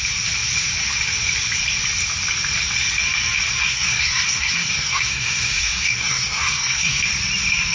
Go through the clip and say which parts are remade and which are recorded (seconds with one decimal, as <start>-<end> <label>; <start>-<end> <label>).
0.0-3.6 recorded; 3.6-7.0 remade; 7.0-7.7 recorded